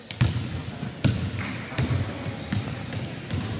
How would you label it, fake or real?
real